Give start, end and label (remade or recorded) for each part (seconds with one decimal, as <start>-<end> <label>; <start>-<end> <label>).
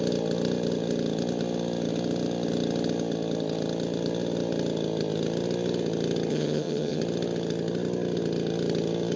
0.0-6.3 recorded; 6.3-7.0 remade; 7.0-9.2 recorded